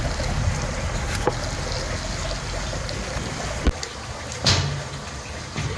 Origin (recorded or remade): recorded